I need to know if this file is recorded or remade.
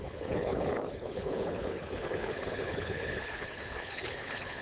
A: remade